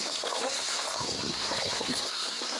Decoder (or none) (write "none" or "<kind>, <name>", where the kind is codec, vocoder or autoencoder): codec, SNAC